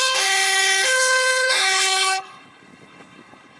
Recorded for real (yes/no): no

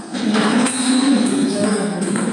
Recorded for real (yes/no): no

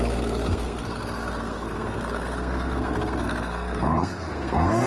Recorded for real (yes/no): no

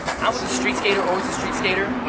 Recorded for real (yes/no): yes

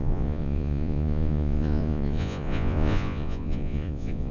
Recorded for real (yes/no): no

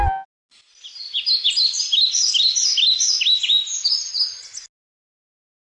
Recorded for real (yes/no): yes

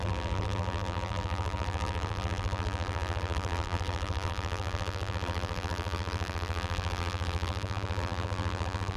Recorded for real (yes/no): no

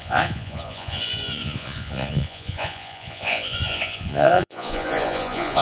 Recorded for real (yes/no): no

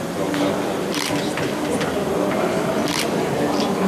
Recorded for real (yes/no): yes